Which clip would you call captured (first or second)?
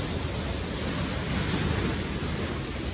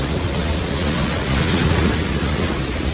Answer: first